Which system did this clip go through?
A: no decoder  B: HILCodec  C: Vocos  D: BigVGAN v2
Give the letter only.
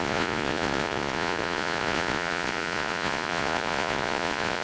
C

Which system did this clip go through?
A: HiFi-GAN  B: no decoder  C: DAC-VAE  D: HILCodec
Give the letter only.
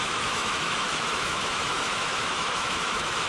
C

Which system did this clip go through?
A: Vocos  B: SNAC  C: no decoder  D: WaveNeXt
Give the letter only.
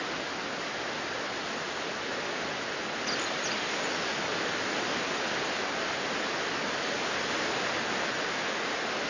C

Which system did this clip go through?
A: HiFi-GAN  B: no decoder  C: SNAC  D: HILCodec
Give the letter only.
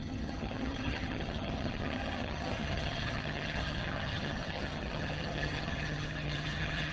A